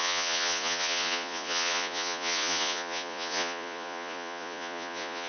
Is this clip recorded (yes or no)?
no